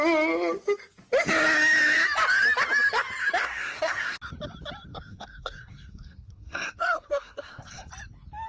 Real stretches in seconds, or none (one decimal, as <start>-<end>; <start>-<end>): 0.0-3.4; 4.2-4.9; 7.9-8.5